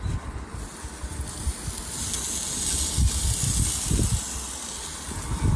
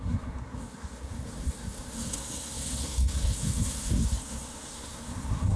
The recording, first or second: first